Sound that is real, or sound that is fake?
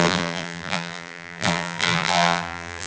fake